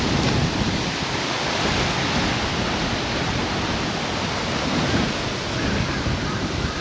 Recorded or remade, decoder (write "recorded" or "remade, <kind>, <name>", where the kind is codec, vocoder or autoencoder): recorded